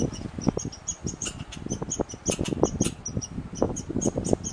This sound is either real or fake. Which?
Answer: real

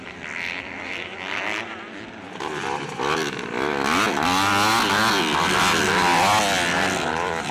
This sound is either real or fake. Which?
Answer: real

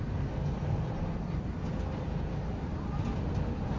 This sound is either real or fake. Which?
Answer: real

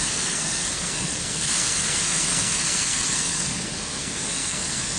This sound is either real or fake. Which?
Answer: fake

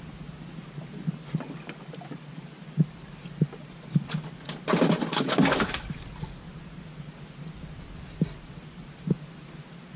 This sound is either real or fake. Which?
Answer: real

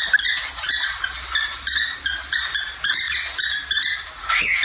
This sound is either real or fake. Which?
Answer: real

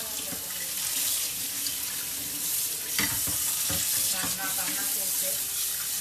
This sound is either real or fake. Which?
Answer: real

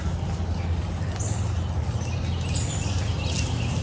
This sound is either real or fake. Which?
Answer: real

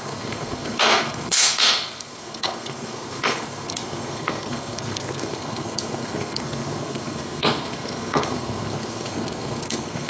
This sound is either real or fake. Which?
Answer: fake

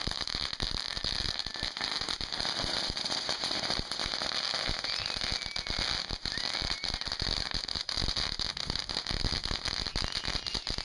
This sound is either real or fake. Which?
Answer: real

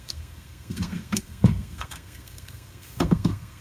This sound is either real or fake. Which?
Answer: fake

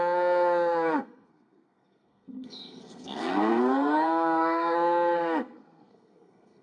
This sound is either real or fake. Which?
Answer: fake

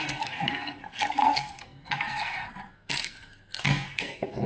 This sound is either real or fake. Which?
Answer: fake